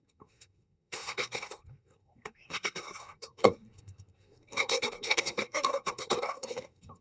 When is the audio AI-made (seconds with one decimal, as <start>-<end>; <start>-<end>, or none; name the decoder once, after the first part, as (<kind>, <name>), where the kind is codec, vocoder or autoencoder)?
0.0-7.0 (codec, SNAC)